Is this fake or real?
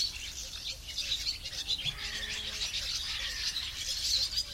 real